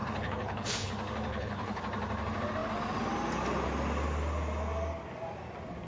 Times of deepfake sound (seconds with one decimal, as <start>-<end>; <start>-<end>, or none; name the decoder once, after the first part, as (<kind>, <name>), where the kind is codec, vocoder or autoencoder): 0.0-0.9 (codec, HILCodec); 1.3-1.8